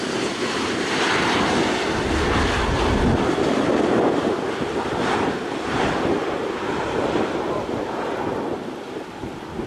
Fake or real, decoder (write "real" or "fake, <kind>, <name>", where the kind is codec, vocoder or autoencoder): real